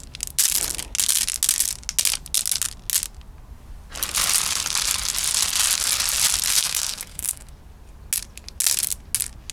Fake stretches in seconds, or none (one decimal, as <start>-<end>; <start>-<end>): 6.5-7.5